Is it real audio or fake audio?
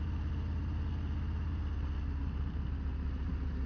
real